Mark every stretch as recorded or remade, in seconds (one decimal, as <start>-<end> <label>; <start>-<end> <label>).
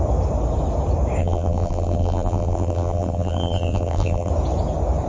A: 0.0-1.2 recorded; 1.2-4.3 remade; 4.3-5.1 recorded